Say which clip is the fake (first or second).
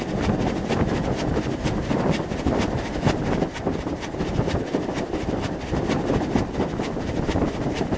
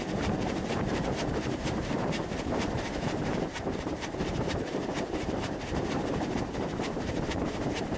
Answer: second